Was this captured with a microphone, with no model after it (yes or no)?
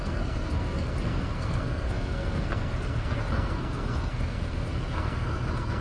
no